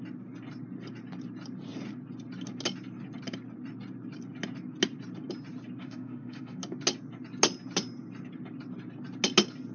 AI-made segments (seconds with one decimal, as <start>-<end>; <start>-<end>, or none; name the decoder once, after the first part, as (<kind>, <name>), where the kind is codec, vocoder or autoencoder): 5.8-6.6 (autoencoder, DAC-VAE)